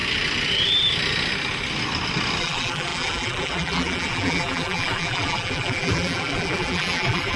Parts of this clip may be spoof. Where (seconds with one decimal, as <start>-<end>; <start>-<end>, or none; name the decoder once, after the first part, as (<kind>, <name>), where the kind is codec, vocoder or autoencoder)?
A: 2.4-7.4 (vocoder, BigVGAN v2)